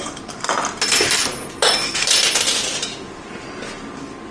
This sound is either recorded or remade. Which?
recorded